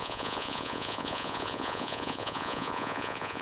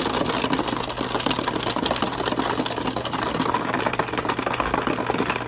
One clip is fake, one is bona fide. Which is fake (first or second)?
first